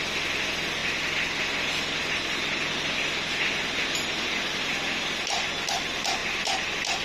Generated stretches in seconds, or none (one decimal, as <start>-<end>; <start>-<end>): none